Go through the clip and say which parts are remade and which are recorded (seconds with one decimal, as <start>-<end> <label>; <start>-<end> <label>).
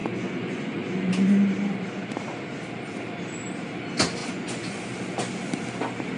0.0-1.1 remade; 1.1-4.2 recorded; 4.2-4.8 remade; 4.8-6.2 recorded